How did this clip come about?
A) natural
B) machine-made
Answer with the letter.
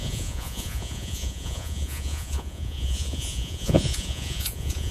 B